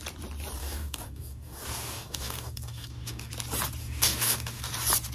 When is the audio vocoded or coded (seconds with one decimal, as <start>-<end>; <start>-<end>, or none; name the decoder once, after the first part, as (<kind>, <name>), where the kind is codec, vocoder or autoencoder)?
0.6-3.3 (codec, DAC); 3.8-4.6